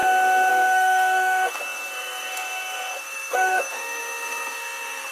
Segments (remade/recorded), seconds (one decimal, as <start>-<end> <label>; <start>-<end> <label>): 0.0-0.5 recorded; 0.5-5.1 remade